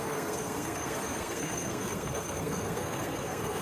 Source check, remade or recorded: remade